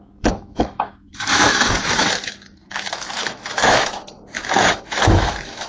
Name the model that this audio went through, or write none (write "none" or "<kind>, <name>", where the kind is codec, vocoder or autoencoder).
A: autoencoder, DAC-VAE